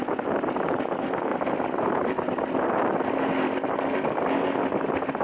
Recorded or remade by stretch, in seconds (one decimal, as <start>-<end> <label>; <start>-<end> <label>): 0.0-1.3 recorded; 1.3-2.4 remade; 2.4-5.2 recorded